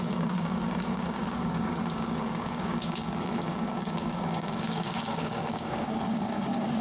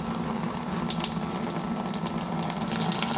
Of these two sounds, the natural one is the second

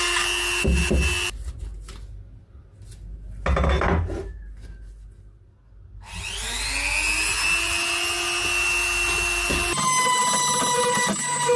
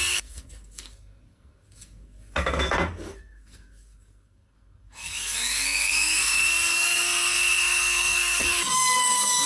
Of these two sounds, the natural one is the first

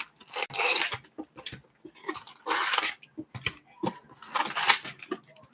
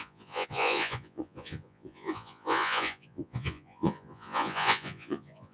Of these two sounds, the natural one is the first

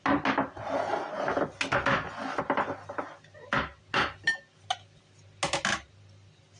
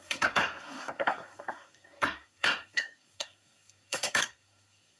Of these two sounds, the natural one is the first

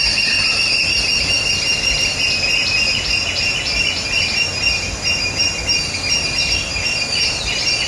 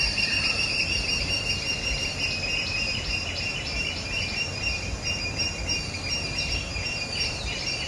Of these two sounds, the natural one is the first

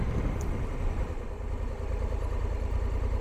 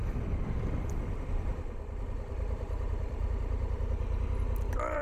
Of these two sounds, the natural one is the first